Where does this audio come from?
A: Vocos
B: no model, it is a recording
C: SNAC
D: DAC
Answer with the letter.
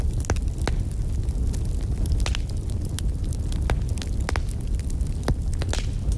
B